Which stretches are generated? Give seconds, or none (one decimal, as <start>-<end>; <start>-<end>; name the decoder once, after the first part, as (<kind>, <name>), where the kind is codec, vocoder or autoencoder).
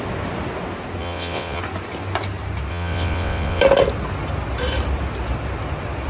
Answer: 1.0-1.6 (vocoder, WaveNeXt); 2.7-3.6